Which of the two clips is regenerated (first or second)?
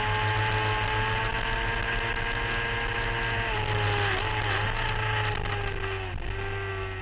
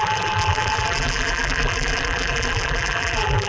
second